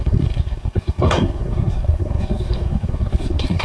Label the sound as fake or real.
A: fake